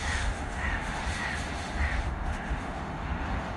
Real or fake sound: fake